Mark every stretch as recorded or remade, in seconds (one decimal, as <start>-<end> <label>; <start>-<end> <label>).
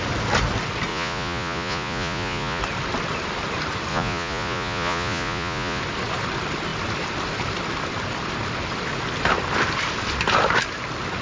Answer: 0.0-0.9 recorded; 0.9-2.6 remade; 2.6-3.9 recorded; 3.9-5.8 remade; 5.8-11.2 recorded